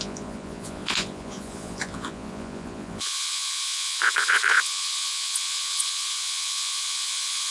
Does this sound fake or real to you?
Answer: fake